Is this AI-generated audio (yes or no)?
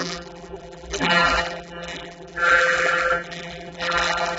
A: yes